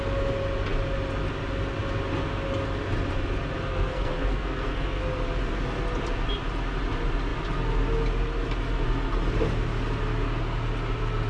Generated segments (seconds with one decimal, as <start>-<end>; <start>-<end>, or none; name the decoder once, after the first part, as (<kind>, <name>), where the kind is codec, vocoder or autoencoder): 3.7-5.0 (codec, SNAC)